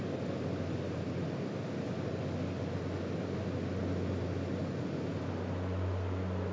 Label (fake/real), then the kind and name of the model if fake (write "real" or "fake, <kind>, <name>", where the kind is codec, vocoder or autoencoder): real